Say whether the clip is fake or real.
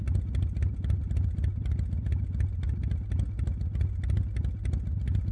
real